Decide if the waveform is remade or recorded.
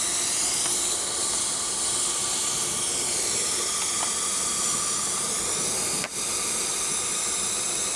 recorded